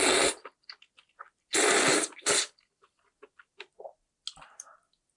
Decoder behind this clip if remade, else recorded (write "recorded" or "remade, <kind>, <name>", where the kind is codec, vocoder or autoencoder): recorded